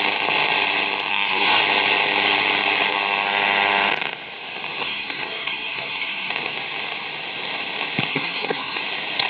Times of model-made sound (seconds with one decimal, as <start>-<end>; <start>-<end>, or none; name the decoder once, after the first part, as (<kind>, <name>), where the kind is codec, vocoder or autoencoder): 1.1-1.6 (codec, SNAC); 4.8-6.3; 8.1-8.8